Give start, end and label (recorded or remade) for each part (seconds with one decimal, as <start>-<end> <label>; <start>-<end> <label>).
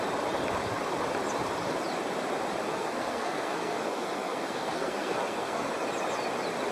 0.0-2.7 recorded; 2.7-5.7 remade; 5.7-6.7 recorded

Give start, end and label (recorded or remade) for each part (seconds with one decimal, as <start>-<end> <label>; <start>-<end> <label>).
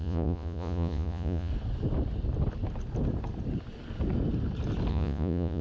0.0-1.5 remade; 1.5-4.9 recorded; 4.9-5.6 remade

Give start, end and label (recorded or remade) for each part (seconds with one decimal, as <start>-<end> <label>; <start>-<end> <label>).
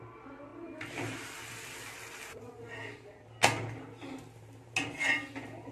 0.0-5.7 recorded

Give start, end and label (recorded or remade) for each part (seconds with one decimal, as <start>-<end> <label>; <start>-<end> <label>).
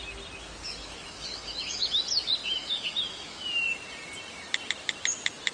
0.0-0.8 recorded; 0.8-2.0 remade; 2.0-2.4 recorded; 2.4-3.4 remade; 3.4-5.5 recorded